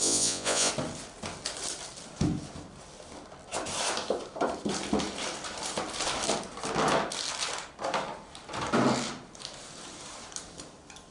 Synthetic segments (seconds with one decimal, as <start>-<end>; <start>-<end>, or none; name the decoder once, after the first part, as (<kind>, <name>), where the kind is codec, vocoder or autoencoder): 0.0-0.7 (vocoder, Vocos)